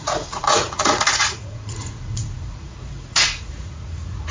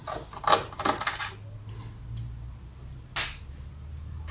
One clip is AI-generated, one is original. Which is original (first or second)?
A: second